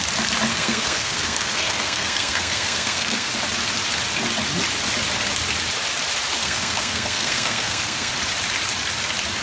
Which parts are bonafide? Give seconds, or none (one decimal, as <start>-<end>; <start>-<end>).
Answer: 0.0-0.5; 3.3-6.4; 8.1-9.4